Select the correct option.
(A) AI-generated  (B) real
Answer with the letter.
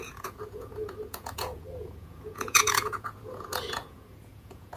A